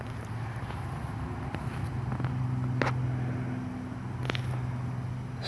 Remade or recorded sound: recorded